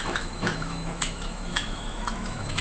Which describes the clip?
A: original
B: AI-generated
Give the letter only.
B